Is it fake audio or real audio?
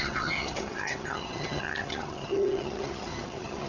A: fake